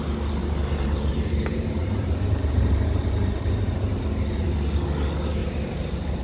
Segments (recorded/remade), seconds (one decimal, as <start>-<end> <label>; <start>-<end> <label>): 0.0-0.4 recorded; 0.4-4.0 remade; 4.0-5.4 recorded; 5.4-6.2 remade